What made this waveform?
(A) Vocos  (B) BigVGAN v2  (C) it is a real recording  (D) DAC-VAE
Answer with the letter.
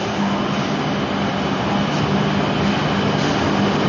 C